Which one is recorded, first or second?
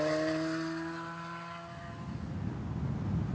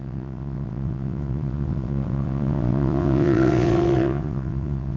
first